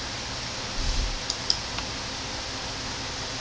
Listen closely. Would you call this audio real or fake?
real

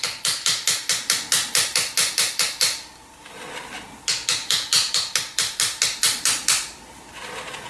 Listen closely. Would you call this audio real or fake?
real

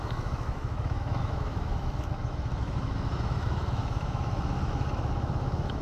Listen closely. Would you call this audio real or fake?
fake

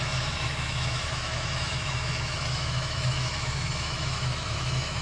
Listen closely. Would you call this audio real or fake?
fake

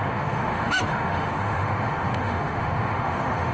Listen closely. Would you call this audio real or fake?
fake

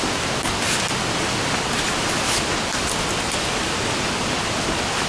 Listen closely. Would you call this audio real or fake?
real